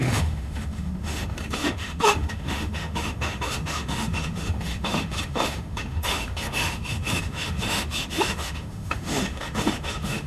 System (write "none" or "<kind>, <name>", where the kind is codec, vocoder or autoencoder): autoencoder, DAC-VAE